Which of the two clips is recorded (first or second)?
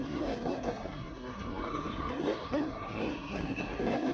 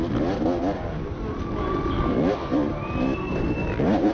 second